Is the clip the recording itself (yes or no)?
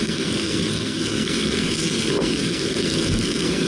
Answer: no